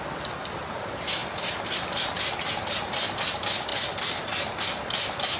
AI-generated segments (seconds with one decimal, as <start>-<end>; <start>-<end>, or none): none